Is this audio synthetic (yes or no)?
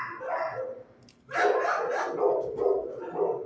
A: no